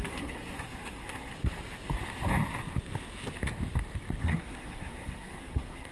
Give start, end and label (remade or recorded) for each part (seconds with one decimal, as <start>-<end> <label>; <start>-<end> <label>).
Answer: 0.0-1.3 remade; 1.3-4.2 recorded; 4.2-5.9 remade